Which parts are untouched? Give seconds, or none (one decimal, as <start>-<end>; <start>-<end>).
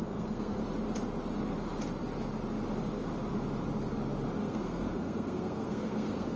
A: 0.6-4.4